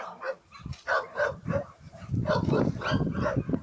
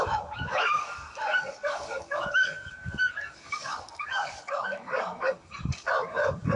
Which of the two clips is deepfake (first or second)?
second